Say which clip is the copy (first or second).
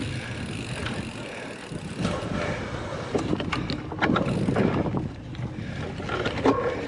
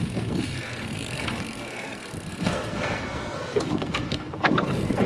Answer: second